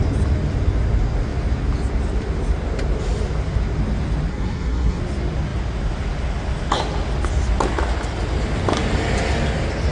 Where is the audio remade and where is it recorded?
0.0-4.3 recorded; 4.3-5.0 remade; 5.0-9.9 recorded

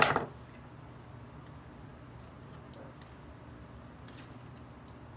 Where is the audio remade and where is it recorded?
0.0-5.2 recorded

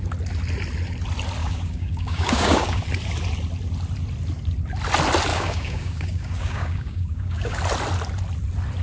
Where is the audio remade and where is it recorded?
0.0-1.4 recorded; 1.4-2.8 remade; 2.8-5.3 recorded; 5.3-7.6 remade; 7.6-8.8 recorded

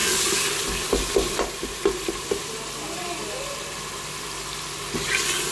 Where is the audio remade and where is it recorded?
0.0-5.5 recorded

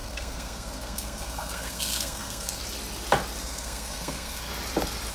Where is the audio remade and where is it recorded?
0.0-2.6 remade; 2.6-3.4 recorded; 3.4-4.5 remade; 4.5-5.1 recorded

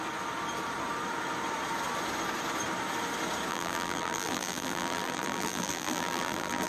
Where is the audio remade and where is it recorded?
0.0-3.5 recorded; 3.5-6.7 remade

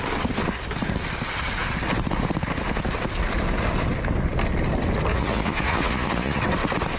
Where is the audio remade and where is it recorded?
0.0-5.1 recorded; 5.1-6.4 remade; 6.4-7.0 recorded